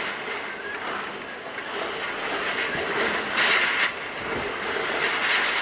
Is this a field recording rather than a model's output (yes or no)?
yes